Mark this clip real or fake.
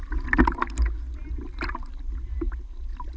real